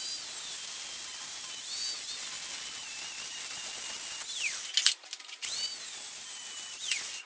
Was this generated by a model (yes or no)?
no